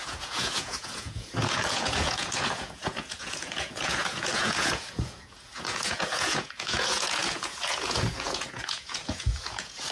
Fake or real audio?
fake